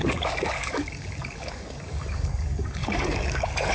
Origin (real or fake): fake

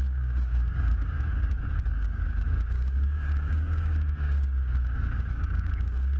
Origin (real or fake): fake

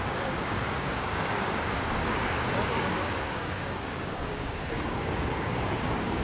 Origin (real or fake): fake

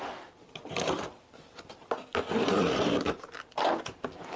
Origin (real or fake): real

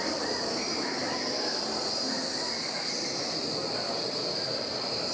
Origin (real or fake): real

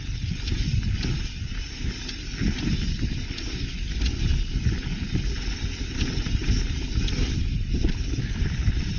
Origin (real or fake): real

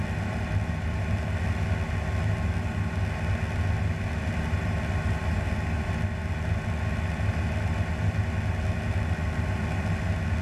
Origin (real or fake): real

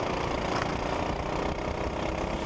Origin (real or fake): real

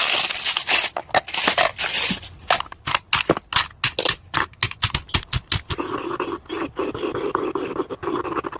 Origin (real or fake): real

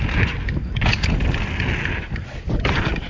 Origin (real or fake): real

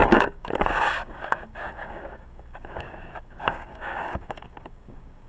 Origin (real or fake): fake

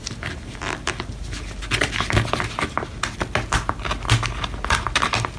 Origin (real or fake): real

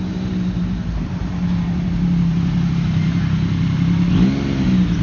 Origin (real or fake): real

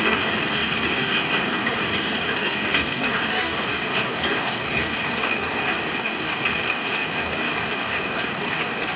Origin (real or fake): fake